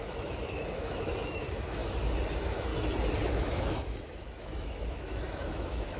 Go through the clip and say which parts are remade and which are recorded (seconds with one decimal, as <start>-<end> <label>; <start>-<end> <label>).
0.0-1.8 remade; 1.8-2.3 recorded; 2.3-2.7 remade; 2.7-3.3 recorded; 3.3-6.0 remade